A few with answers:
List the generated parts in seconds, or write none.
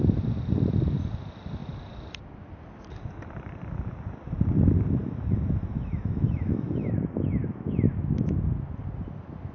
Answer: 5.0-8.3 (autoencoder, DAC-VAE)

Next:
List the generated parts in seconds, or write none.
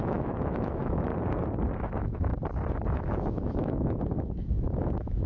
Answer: 0.0-1.1 (autoencoder, DAC-VAE); 1.8-2.3; 2.9-5.3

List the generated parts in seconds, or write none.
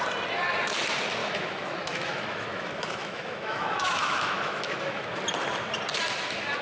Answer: 1.2-5.2 (autoencoder, DAC-VAE)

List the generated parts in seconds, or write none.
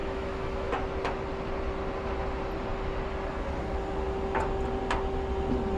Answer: 0.0-0.7 (autoencoder, DAC-VAE)